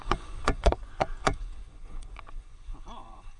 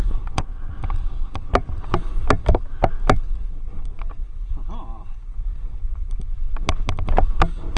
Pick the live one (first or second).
second